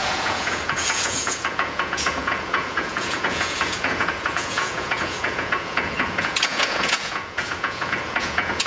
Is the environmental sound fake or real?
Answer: fake